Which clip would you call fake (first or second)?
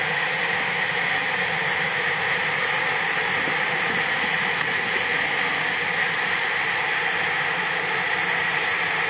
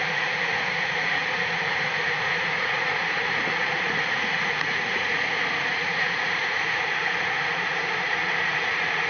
second